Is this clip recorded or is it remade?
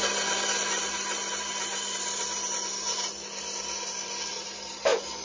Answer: recorded